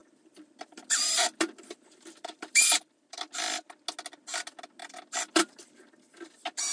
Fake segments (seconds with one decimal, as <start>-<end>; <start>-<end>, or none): 0.0-3.3; 4.8-5.9